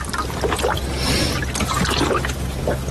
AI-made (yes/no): no